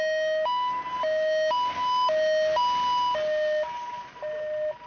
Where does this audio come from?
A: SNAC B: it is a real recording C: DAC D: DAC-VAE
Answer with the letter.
B